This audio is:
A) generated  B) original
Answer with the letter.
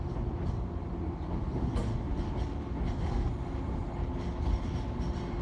B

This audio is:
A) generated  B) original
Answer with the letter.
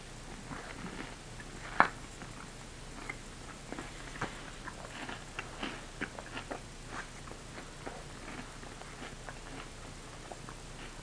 B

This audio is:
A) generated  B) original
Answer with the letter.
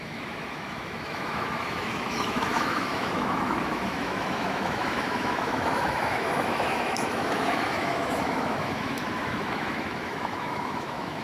A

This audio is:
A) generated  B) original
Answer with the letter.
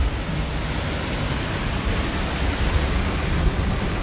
B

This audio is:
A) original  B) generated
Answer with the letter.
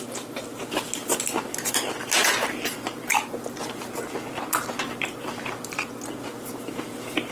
A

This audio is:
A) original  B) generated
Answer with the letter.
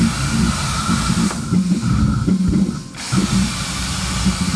A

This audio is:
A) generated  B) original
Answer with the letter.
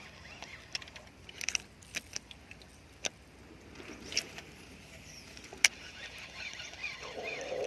B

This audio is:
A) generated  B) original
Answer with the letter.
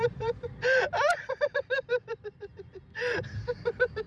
B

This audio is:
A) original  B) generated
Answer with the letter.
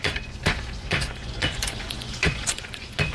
B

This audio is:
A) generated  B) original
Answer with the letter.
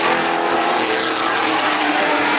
B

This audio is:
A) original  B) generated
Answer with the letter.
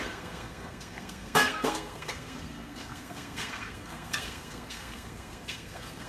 B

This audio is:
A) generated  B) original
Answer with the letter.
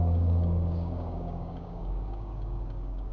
A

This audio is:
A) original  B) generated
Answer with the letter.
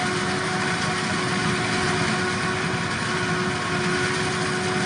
A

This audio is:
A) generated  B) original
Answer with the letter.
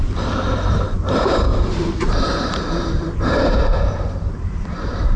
A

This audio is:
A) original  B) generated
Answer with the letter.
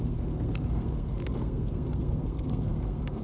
B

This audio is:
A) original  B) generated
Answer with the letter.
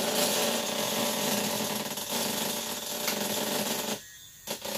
A